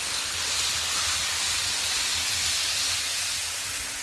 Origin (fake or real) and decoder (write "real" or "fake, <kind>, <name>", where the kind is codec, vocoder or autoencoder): real